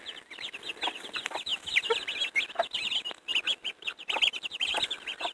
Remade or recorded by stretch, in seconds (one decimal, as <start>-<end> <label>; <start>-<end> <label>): 0.0-5.3 recorded